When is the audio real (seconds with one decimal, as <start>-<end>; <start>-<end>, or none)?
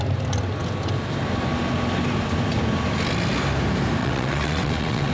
0.0-4.0